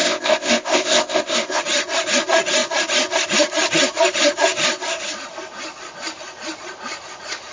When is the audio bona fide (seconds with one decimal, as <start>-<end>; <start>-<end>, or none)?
1.6-7.5